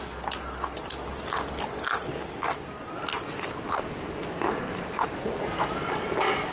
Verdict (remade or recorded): recorded